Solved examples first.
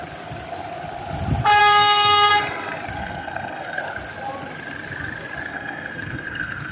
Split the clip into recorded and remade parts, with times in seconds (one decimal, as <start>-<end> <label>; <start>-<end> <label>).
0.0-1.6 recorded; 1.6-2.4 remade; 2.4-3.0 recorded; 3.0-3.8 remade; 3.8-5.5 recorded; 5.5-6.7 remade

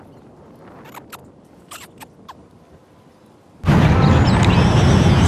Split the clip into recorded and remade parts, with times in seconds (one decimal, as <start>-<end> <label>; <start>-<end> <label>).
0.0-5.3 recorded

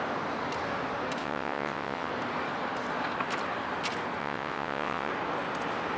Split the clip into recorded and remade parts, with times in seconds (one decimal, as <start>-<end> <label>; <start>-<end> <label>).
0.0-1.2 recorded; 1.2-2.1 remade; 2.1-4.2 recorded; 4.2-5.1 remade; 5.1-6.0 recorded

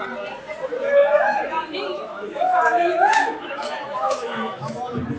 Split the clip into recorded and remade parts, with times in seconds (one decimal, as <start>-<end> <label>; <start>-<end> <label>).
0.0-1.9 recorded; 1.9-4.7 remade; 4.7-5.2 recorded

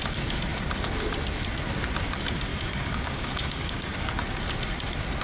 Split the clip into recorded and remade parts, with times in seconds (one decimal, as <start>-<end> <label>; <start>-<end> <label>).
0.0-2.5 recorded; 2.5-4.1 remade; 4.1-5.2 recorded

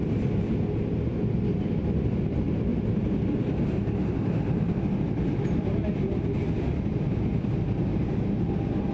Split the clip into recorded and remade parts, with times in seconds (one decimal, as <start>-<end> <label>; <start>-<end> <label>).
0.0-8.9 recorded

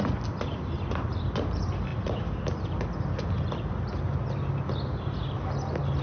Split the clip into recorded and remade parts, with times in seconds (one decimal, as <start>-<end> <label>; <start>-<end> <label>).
0.0-6.0 recorded

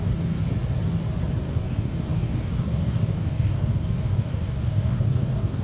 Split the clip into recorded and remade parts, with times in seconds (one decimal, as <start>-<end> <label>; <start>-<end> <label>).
0.0-0.4 remade; 0.4-1.4 recorded; 1.4-5.6 remade